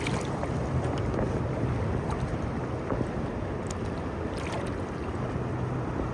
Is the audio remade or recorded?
recorded